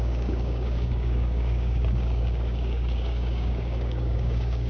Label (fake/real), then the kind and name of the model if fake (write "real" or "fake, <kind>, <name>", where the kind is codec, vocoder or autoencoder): fake, codec, DAC